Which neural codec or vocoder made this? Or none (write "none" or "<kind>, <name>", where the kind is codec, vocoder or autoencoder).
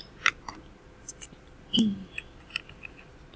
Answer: none